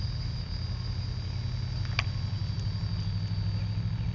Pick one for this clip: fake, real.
real